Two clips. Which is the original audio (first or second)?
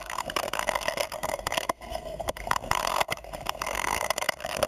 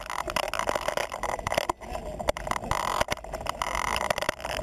second